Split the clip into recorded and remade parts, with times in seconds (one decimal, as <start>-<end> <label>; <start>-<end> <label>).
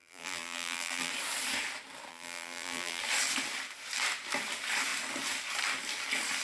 0.0-1.1 remade; 1.1-2.1 recorded; 2.1-3.0 remade; 3.0-6.4 recorded